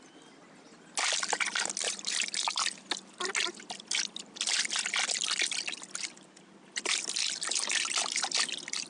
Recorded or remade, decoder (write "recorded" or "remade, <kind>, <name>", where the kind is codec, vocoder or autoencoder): recorded